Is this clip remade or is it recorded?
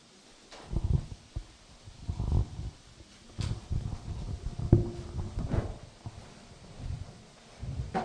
recorded